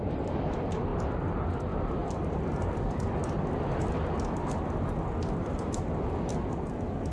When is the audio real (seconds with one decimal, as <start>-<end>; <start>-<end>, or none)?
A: 0.0-2.0; 3.9-5.4; 6.3-7.1